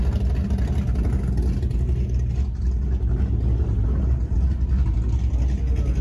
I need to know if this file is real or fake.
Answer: real